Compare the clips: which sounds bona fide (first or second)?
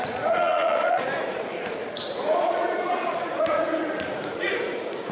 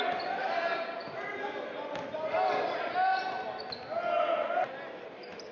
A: second